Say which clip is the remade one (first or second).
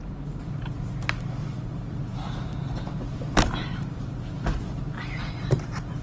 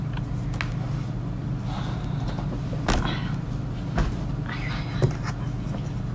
first